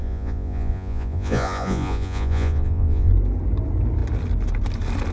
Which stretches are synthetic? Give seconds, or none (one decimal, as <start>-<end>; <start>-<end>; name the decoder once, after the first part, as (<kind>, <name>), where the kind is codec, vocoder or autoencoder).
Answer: 0.0-3.1 (vocoder, Vocos)